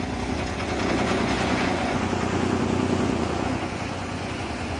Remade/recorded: remade